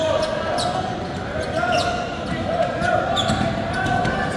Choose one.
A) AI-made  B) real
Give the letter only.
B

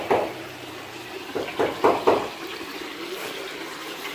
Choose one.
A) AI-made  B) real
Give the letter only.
B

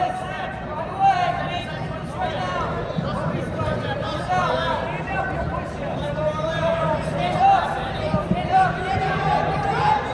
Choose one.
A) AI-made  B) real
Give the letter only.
A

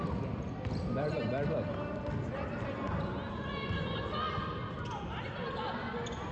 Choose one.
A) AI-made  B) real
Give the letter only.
B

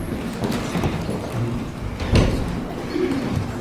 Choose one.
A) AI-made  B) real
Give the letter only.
B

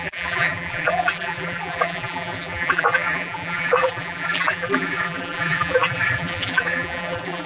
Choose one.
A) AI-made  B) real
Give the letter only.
A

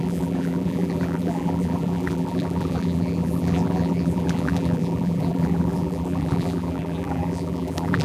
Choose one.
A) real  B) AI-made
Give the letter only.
B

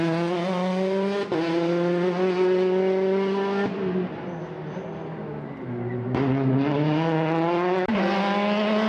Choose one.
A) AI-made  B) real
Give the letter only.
B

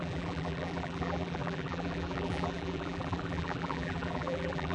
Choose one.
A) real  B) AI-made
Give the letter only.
B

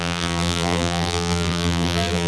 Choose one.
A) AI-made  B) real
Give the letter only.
A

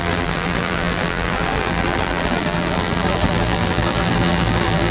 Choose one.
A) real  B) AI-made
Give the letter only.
B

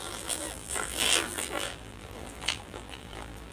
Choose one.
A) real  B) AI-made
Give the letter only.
B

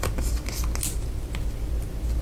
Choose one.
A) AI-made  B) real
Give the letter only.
B